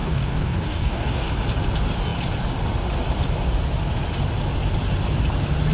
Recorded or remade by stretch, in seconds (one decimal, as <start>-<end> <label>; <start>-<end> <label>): 0.0-1.3 remade; 1.3-5.7 recorded